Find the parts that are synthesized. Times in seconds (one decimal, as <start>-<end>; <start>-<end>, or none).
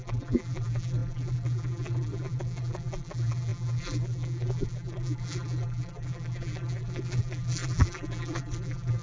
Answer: 0.0-9.0